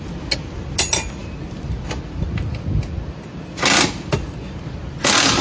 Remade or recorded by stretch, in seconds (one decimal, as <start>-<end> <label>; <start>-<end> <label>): 0.0-5.4 recorded